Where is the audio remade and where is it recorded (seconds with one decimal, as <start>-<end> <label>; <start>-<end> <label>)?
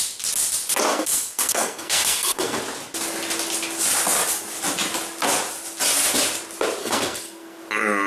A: 0.0-0.9 recorded; 0.9-2.6 remade; 2.6-6.8 recorded; 6.8-7.6 remade; 7.6-8.1 recorded